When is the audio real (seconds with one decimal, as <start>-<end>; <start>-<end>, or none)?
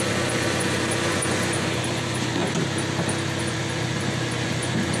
2.4-3.4